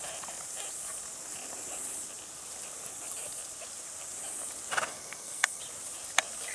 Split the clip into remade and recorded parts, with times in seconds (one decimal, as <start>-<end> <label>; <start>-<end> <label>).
0.0-4.9 recorded; 4.9-5.6 remade; 5.6-6.5 recorded